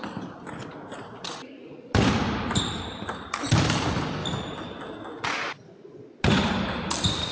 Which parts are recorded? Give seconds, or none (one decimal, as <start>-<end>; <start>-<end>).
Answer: 0.0-7.3